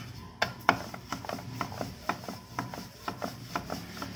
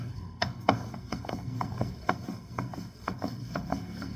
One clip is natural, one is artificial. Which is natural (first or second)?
first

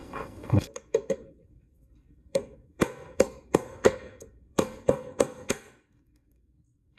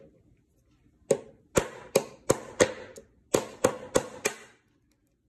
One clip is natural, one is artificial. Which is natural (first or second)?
second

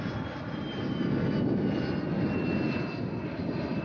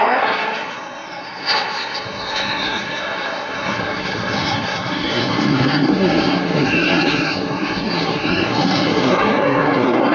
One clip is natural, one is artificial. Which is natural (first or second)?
first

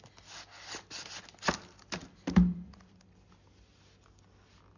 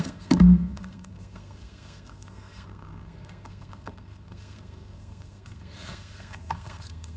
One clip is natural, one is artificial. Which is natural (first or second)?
first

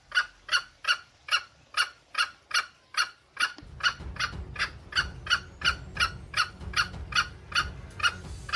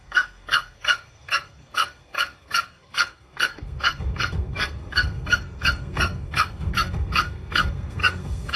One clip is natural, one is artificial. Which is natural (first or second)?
first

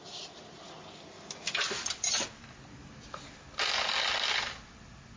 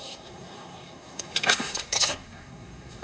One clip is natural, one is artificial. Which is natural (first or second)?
first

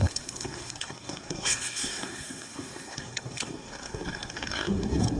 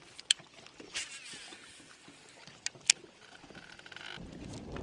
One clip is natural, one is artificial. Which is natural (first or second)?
second